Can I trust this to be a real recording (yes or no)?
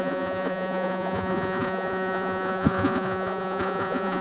no